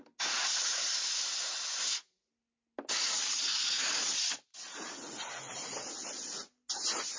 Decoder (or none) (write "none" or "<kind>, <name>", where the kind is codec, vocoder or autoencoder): none